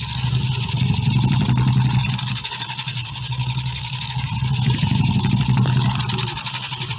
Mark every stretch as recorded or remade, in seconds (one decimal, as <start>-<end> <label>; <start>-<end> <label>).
0.0-7.0 recorded